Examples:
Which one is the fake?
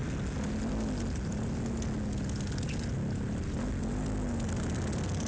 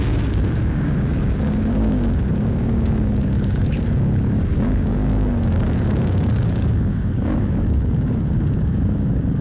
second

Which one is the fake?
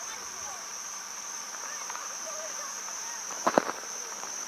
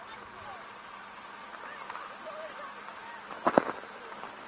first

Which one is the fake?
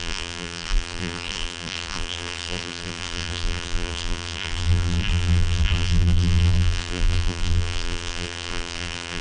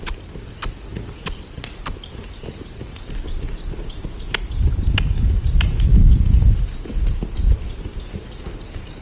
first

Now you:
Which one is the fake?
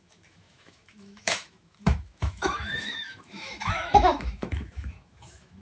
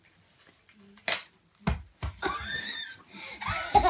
first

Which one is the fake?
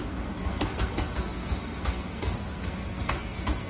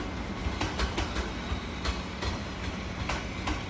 first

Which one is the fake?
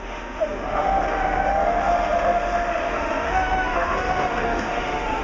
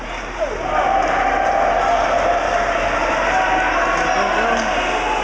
first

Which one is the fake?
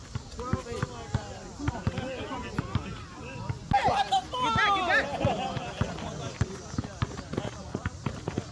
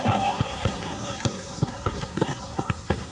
second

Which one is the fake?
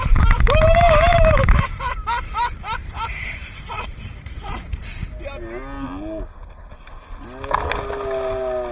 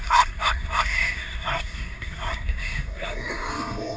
second